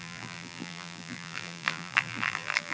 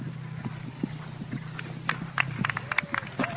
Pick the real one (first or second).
second